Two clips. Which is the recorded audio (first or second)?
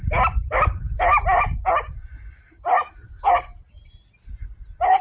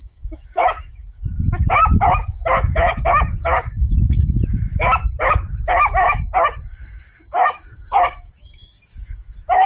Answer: first